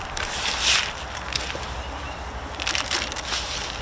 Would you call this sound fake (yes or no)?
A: no